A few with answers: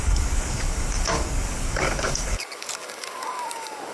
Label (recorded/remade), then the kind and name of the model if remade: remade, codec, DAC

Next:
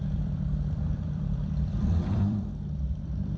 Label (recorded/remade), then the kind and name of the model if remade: remade, vocoder, BigVGAN v2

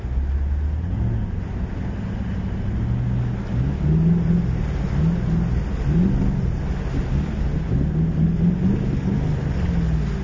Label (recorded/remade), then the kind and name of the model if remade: recorded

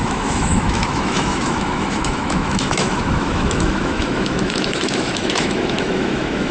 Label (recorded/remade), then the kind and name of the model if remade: remade, autoencoder, DAC-VAE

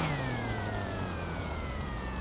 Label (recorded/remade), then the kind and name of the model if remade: remade, vocoder, Vocos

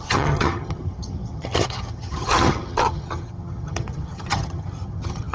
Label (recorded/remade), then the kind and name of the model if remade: remade, vocoder, HiFi-GAN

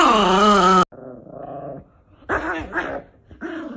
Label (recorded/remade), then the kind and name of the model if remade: recorded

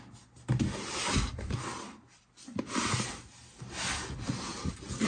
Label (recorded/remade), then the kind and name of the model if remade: recorded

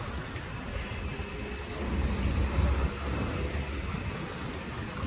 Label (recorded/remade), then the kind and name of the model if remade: recorded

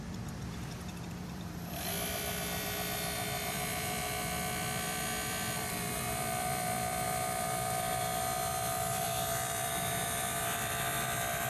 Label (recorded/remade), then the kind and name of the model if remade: remade, vocoder, BigVGAN v2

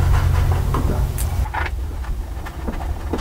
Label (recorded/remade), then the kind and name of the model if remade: recorded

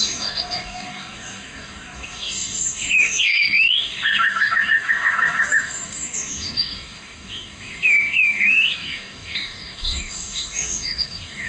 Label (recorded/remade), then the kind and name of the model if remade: remade, codec, DAC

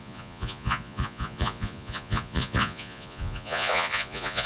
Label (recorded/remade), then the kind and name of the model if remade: remade, vocoder, Vocos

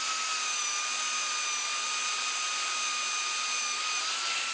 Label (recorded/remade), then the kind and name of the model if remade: recorded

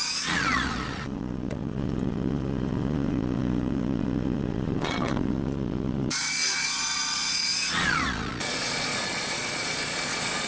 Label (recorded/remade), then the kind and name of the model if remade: remade, vocoder, Vocos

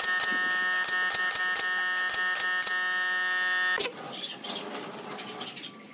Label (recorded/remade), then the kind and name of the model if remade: recorded